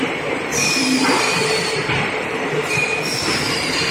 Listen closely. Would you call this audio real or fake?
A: fake